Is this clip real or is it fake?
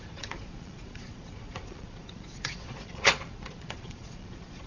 fake